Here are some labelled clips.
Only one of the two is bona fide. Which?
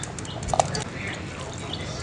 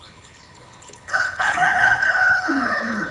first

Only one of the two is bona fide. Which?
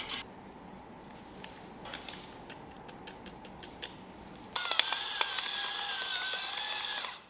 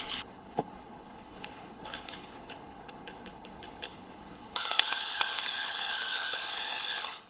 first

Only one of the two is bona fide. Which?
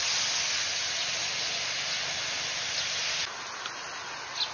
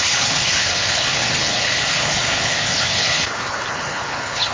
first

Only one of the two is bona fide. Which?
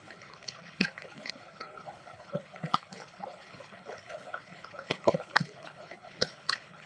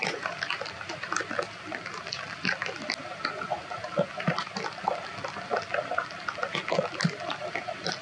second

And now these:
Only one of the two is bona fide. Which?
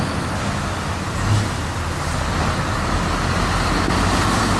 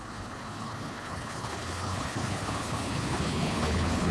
first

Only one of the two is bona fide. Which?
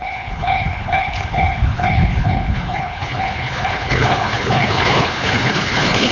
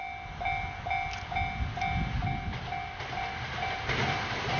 second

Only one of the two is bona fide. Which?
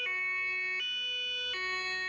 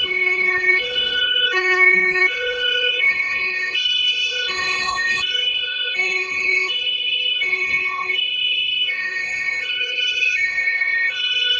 first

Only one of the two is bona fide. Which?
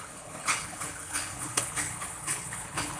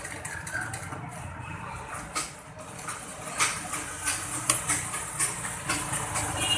second